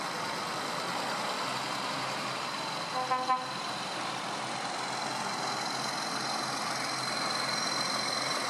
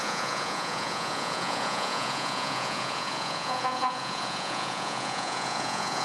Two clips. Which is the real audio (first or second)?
first